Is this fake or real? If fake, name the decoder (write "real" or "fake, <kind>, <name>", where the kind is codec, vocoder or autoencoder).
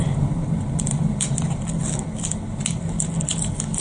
real